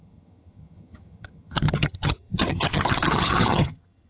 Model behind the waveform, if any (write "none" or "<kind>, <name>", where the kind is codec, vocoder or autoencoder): vocoder, HiFi-GAN